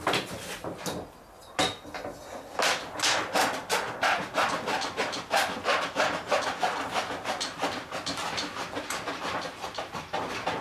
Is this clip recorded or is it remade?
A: recorded